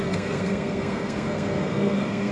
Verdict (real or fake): fake